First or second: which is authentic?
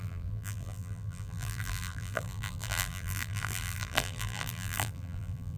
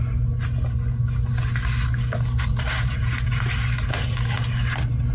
second